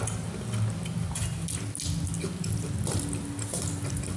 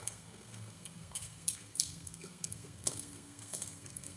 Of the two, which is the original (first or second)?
first